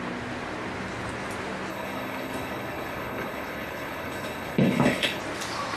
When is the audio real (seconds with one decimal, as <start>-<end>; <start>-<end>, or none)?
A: 0.0-1.7; 5.2-5.8